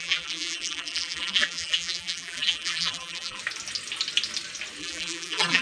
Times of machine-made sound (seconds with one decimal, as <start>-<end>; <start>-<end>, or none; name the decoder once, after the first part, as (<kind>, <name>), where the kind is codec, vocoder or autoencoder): 0.0-3.4 (vocoder, BigVGAN v2); 4.8-5.6